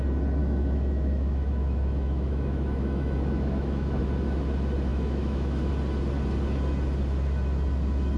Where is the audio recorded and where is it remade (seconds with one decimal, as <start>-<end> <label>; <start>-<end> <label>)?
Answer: 0.0-0.4 recorded; 0.4-4.0 remade; 4.0-4.9 recorded; 4.9-5.7 remade; 5.7-8.2 recorded